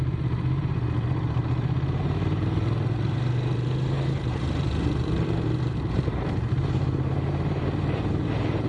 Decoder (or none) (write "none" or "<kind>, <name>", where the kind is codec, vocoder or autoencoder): vocoder, BigVGAN v2